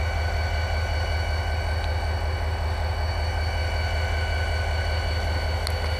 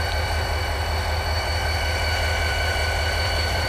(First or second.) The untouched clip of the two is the first